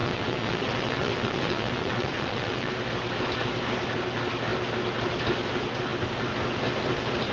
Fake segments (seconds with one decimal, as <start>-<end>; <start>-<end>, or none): 0.0-2.7